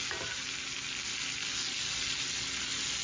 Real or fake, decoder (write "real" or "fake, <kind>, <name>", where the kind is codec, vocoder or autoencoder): real